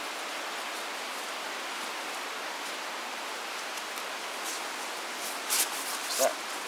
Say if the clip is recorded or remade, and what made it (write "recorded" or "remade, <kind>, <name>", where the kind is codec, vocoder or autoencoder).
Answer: recorded